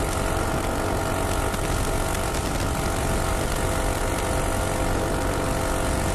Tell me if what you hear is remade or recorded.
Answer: recorded